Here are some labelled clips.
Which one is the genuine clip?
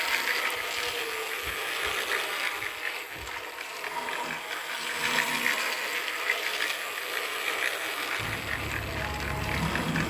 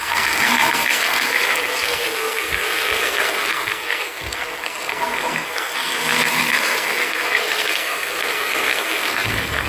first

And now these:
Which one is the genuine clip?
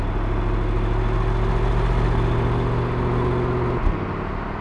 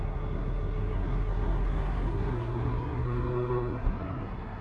first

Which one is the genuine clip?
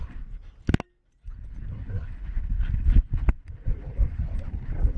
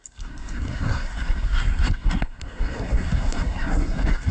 first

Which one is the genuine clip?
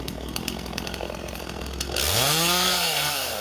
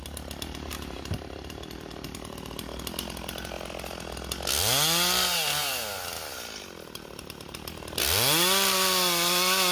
second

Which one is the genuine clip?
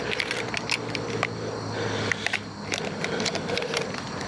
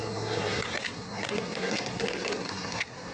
first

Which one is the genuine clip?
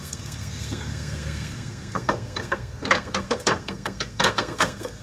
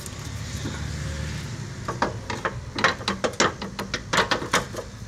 second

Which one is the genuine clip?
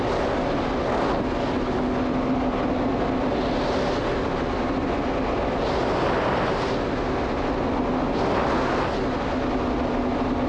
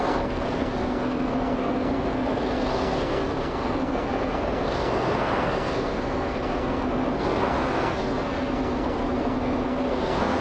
first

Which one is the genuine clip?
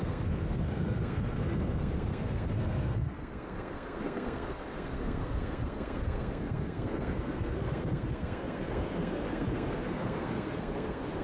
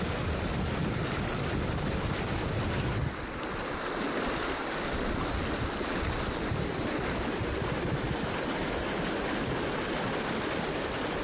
second